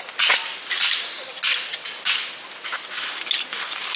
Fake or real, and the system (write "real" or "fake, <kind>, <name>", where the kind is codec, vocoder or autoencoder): real